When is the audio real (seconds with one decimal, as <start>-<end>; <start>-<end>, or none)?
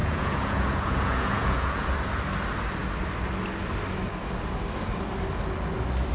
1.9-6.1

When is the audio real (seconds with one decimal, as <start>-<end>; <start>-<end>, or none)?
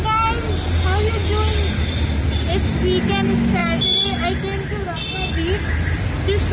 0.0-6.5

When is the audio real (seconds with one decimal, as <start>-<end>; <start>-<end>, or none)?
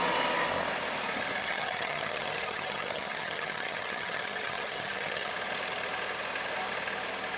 0.0-1.4; 5.3-7.4